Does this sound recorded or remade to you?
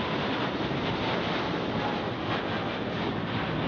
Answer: recorded